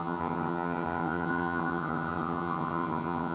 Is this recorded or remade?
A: remade